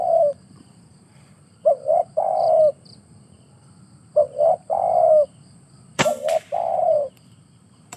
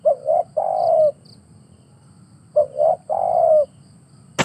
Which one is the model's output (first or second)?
first